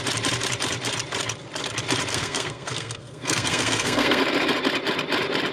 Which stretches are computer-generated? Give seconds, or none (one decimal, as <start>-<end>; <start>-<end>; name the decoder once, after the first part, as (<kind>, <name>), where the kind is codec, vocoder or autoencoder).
2.1-4.2 (codec, SNAC)